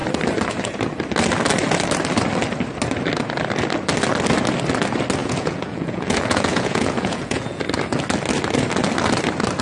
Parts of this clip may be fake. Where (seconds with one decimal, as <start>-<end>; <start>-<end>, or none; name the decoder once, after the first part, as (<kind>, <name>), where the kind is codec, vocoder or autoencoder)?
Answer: 5.2-7.6 (vocoder, Vocos)